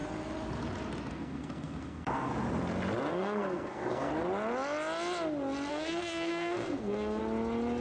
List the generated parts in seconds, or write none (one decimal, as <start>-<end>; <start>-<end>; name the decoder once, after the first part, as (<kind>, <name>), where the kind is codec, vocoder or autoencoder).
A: 1.1-2.3 (codec, SNAC); 3.1-4.1; 5.7-7.2